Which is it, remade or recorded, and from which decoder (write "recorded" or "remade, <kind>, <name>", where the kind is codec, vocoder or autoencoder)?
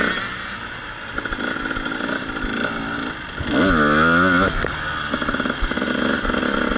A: recorded